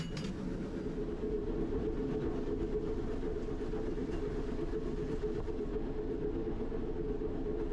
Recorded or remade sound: recorded